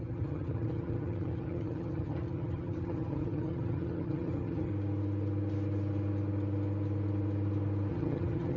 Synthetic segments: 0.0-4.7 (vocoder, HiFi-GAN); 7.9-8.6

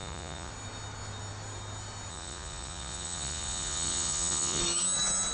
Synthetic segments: 0.0-0.5 (vocoder, Vocos); 2.1-4.6

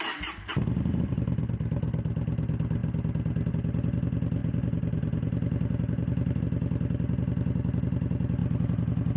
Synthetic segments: 0.5-1.5 (vocoder, BigVGAN v2); 4.4-6.4; 8.4-9.2

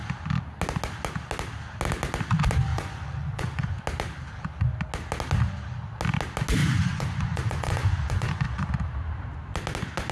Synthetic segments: 2.7-3.7 (vocoder, Vocos); 6.6-8.7

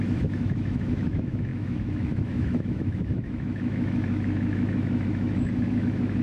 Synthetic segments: 0.0-6.2 (autoencoder, DAC-VAE)